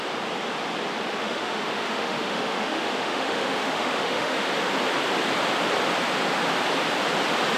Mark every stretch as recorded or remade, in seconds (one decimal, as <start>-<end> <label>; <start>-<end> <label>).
0.0-1.2 recorded; 1.2-4.5 remade; 4.5-7.6 recorded